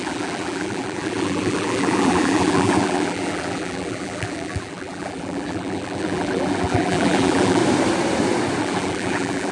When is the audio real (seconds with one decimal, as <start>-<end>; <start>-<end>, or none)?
7.6-8.6